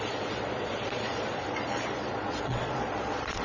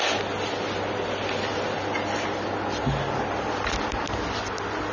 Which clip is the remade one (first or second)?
first